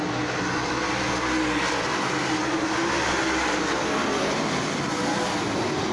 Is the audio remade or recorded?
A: recorded